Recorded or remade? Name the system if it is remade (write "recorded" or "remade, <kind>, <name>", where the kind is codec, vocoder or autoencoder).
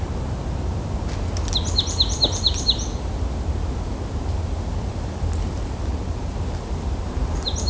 recorded